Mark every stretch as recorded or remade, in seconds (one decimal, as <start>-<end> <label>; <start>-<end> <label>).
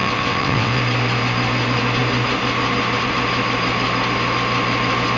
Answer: 0.0-0.8 remade; 0.8-5.2 recorded